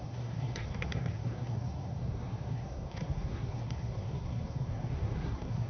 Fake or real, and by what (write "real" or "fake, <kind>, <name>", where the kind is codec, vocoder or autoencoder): fake, codec, SNAC